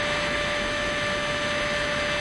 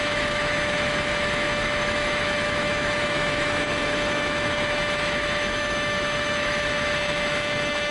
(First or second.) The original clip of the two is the first